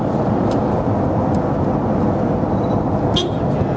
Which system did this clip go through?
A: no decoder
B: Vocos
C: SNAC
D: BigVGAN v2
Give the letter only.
A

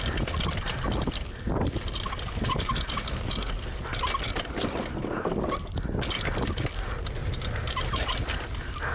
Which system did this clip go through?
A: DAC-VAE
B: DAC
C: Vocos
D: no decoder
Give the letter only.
D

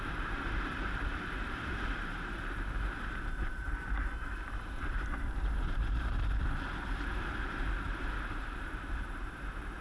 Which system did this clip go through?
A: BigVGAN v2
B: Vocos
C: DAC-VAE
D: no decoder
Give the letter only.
A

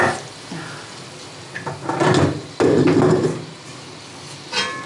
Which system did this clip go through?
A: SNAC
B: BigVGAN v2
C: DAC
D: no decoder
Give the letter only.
D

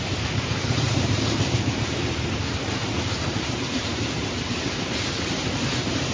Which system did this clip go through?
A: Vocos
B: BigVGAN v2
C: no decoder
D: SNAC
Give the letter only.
B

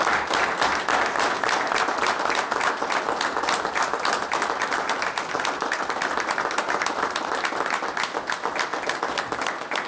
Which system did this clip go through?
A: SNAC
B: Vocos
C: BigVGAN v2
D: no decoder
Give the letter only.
D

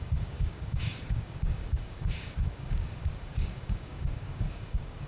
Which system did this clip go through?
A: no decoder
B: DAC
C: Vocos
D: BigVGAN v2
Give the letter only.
B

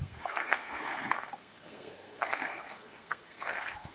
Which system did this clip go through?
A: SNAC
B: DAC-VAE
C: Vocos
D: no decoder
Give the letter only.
A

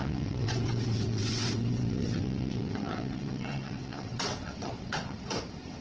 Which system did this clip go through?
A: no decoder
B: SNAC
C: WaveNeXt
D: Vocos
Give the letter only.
C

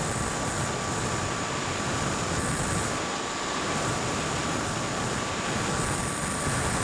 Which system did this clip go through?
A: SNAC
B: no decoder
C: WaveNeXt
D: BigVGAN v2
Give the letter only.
B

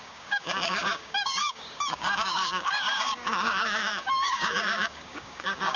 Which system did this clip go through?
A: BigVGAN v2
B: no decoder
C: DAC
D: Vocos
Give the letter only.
C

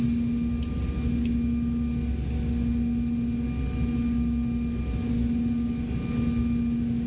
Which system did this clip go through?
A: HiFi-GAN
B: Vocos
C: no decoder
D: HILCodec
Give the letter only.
C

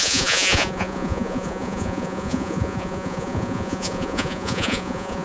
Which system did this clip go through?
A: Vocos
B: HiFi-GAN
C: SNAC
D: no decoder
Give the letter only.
A